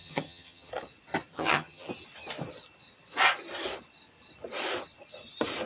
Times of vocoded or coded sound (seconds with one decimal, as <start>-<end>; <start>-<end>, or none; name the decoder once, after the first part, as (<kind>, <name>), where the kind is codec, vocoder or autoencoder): 0.0-0.7 (vocoder, HiFi-GAN); 1.3-1.9